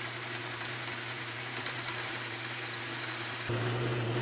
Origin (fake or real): fake